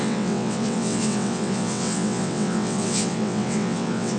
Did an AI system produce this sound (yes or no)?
yes